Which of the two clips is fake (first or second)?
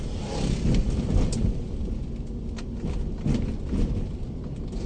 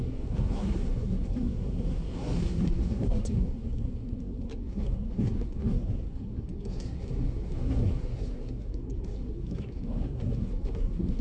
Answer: second